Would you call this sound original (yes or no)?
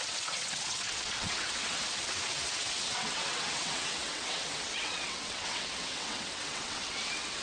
no